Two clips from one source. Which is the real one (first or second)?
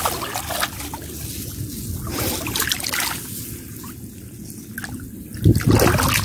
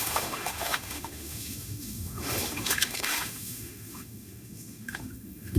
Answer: first